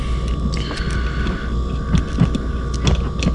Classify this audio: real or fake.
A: real